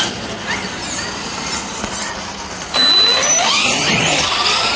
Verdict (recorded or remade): recorded